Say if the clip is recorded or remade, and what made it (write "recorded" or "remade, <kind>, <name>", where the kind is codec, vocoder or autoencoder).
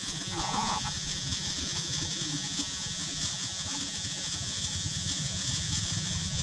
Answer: remade, vocoder, Vocos